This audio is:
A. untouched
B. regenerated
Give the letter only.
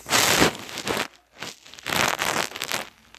A